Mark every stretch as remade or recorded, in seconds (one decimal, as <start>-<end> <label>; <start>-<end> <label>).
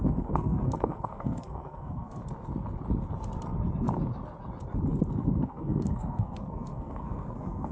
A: 0.0-2.2 remade; 2.2-5.2 recorded; 5.2-7.7 remade